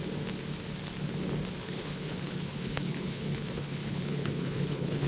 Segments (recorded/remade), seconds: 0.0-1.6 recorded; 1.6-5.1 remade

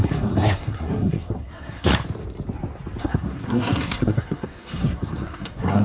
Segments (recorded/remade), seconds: 0.0-1.9 remade; 1.9-3.0 recorded; 3.0-5.8 remade

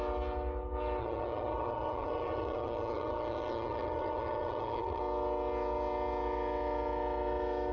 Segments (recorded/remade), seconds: 0.0-1.0 recorded; 1.0-5.0 remade; 5.0-7.7 recorded